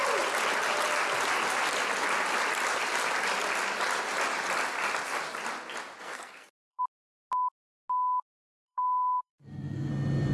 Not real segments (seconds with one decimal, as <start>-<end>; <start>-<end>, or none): 6.0-6.8; 8.4-9.9

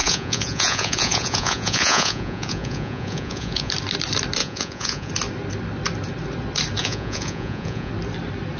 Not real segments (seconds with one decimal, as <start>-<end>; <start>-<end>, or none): 0.0-3.7; 4.4-5.1; 6.8-7.9

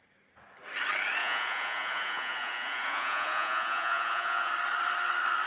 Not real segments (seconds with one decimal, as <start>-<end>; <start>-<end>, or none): 1.2-4.5

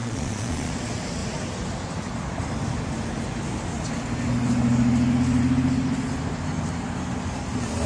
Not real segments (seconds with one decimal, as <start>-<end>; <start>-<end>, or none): 0.0-0.7

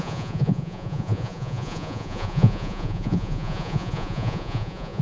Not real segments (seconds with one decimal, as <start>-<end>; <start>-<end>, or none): 0.0-5.0

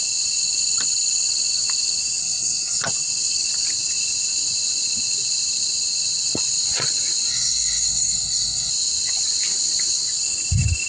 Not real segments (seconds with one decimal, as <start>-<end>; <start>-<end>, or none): 2.2-2.8; 7.3-8.7

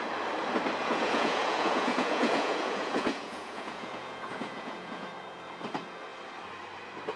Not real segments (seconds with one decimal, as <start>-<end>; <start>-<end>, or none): 0.8-5.1